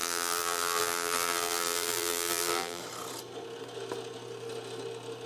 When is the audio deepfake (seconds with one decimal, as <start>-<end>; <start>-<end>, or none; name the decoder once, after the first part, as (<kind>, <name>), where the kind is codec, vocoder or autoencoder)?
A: 0.0-2.8 (vocoder, BigVGAN v2)